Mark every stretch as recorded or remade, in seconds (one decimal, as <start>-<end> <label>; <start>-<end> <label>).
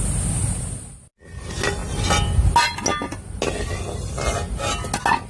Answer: 0.0-5.3 recorded